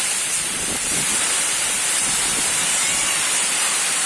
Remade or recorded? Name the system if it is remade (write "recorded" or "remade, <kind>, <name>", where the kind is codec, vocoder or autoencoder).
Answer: remade, vocoder, BigVGAN v2